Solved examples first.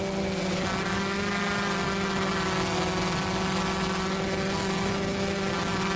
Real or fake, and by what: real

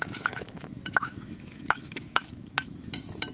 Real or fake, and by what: fake, autoencoder, DAC-VAE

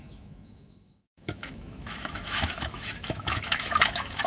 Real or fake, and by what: fake, autoencoder, DAC-VAE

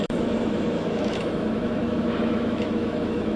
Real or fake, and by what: fake, autoencoder, DAC-VAE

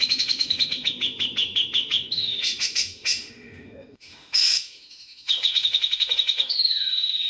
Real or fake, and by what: fake, autoencoder, DAC-VAE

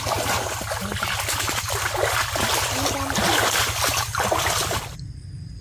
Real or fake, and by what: real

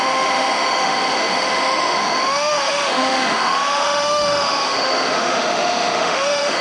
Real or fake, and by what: fake, autoencoder, DAC-VAE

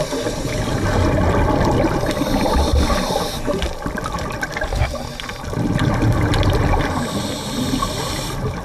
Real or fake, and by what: real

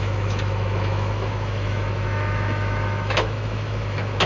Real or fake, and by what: fake, autoencoder, DAC-VAE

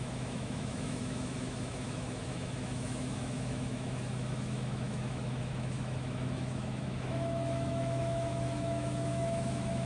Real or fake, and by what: fake, autoencoder, DAC-VAE